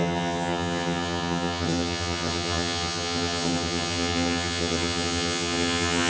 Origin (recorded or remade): remade